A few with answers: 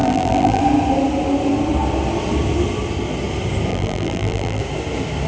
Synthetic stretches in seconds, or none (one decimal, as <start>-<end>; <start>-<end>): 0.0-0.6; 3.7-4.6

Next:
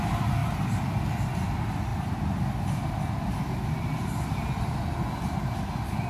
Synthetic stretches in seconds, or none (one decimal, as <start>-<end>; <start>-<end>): 0.4-1.3; 1.9-4.8

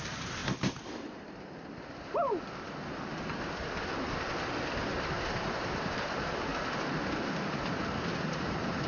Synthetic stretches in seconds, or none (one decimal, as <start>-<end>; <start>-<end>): 0.0-0.4; 5.1-6.5; 7.7-8.9